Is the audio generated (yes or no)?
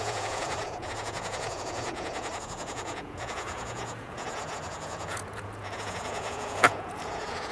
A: yes